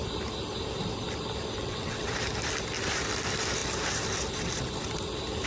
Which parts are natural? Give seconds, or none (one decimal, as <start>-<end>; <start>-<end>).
0.0-1.6; 2.1-5.5